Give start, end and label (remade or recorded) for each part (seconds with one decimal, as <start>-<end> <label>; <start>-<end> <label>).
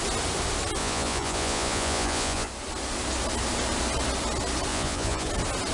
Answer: 0.0-0.8 recorded; 0.8-2.5 remade; 2.5-4.7 recorded; 4.7-5.3 remade; 5.3-5.7 recorded